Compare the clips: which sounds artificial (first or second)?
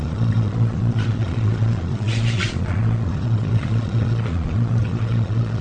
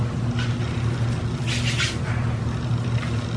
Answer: first